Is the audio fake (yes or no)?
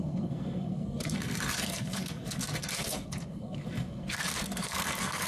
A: yes